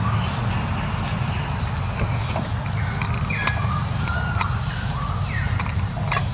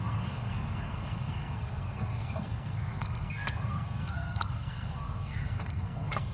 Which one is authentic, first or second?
first